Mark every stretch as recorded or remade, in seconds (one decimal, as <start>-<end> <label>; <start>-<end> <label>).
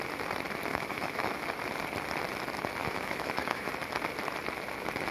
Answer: 0.0-0.7 recorded; 0.7-1.5 remade; 1.5-2.8 recorded; 2.8-3.7 remade; 3.7-5.1 recorded